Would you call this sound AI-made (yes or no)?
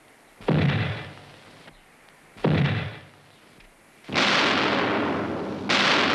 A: no